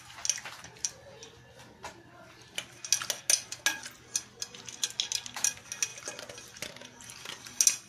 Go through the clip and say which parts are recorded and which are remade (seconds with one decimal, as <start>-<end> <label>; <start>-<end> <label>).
0.0-7.9 recorded